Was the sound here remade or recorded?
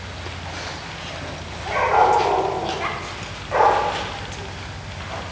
recorded